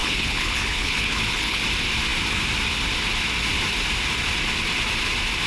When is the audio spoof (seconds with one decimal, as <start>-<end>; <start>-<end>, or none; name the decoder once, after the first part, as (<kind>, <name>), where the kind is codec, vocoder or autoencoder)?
0.0-1.6 (codec, HILCodec)